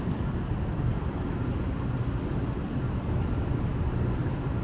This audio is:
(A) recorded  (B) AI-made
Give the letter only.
A